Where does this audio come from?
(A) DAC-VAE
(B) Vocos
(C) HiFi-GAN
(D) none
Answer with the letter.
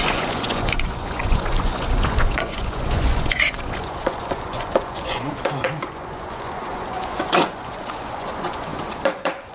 B